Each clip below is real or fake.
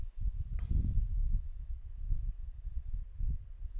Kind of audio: real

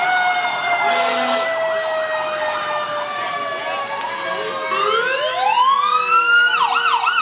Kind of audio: real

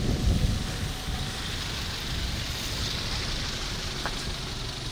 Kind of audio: real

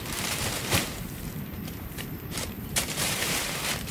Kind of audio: fake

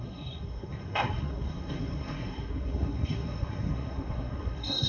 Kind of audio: fake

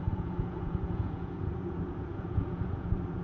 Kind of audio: fake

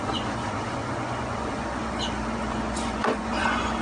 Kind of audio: fake